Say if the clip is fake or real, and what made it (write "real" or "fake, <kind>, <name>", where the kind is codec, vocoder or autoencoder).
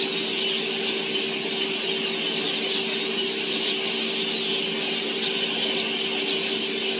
real